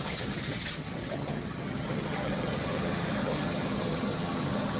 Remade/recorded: remade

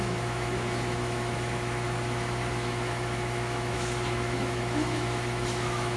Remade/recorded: remade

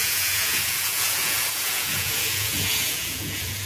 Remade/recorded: remade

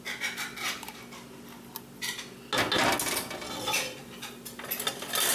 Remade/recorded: recorded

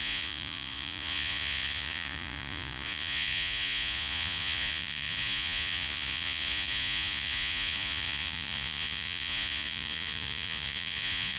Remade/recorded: remade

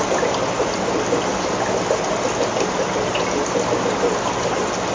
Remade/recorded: recorded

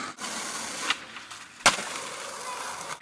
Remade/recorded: recorded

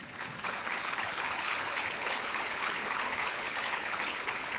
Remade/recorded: remade